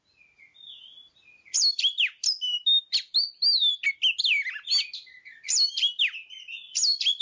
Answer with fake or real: real